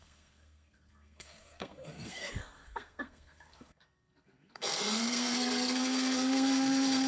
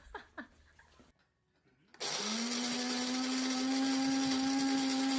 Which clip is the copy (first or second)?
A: first